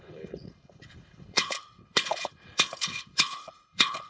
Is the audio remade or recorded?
remade